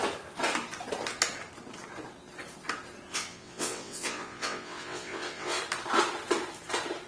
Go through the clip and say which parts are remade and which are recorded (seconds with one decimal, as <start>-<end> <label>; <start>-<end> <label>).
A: 0.0-3.1 recorded; 3.1-5.6 remade; 5.6-7.1 recorded